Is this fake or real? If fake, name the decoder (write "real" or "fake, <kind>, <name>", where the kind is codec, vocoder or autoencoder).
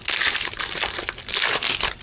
real